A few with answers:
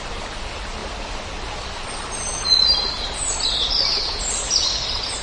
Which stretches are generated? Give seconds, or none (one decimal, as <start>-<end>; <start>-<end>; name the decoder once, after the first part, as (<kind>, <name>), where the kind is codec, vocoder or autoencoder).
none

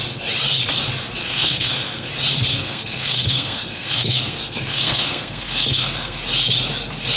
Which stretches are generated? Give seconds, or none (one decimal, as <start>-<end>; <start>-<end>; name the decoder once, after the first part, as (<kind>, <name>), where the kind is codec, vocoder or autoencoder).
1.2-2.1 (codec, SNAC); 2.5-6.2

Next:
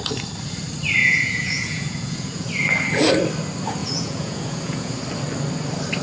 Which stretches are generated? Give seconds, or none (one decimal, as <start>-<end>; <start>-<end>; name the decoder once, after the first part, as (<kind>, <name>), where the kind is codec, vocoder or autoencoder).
1.0-2.5 (vocoder, Vocos); 3.8-5.0

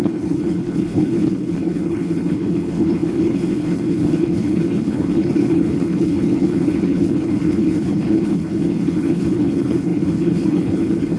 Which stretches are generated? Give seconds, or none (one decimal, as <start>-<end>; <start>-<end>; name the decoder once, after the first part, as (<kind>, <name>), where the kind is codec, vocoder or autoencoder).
0.0-11.2 (codec, HILCodec)